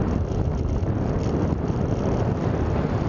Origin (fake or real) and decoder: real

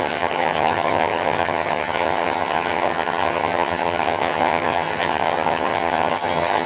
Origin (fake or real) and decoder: fake, vocoder, HiFi-GAN